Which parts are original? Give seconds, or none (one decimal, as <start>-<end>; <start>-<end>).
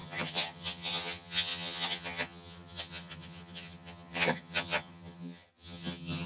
none